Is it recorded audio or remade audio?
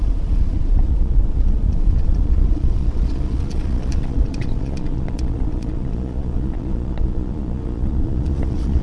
remade